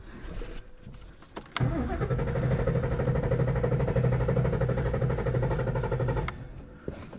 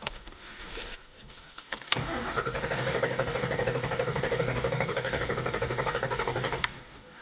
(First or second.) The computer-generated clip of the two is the second